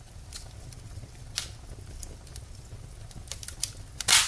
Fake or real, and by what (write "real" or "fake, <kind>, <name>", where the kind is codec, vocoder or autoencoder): real